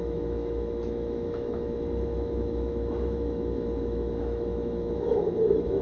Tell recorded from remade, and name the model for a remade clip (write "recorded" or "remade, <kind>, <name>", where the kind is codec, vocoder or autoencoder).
remade, autoencoder, DAC-VAE